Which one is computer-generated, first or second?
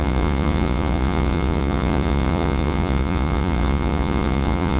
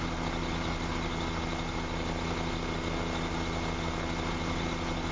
first